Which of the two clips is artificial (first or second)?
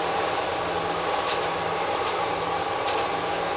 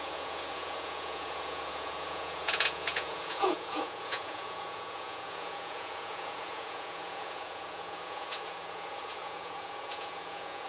second